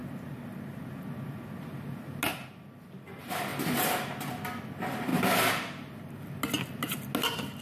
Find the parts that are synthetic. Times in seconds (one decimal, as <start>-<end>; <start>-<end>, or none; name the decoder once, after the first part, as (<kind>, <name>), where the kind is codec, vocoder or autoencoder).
none